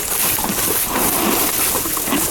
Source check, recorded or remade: recorded